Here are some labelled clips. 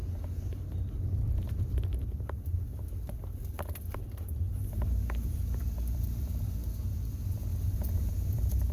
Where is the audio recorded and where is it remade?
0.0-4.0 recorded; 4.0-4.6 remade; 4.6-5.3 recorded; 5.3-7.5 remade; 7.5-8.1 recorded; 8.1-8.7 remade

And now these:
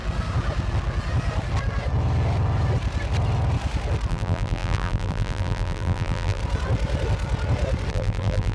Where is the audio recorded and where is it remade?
0.0-4.1 recorded; 4.1-6.4 remade; 6.4-7.9 recorded; 7.9-8.5 remade

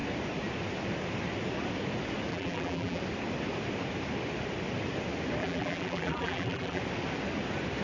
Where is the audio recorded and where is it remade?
0.0-2.3 recorded; 2.3-3.0 remade; 3.0-5.4 recorded; 5.4-6.8 remade; 6.8-7.8 recorded

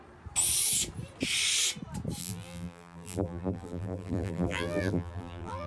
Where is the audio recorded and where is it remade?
0.0-2.2 recorded; 2.2-5.7 remade

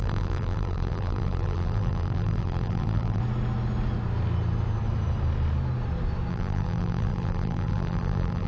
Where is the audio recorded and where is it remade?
0.0-3.2 remade; 3.2-6.3 recorded; 6.3-8.5 remade

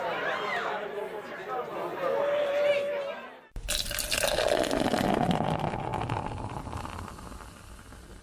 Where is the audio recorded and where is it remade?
0.0-8.2 recorded

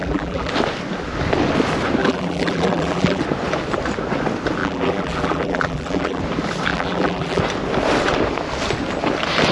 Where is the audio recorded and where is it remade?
0.0-0.5 remade; 0.5-2.0 recorded; 2.0-3.2 remade; 3.2-4.6 recorded; 4.6-6.2 remade; 6.2-6.7 recorded; 6.7-7.4 remade; 7.4-9.5 recorded

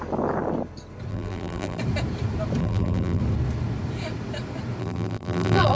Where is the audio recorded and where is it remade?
0.0-1.1 recorded; 1.1-1.8 remade; 1.8-2.6 recorded; 2.6-3.2 remade; 3.2-4.8 recorded; 4.8-5.8 remade